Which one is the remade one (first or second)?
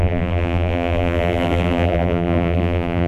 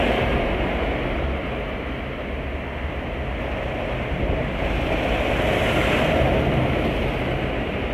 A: first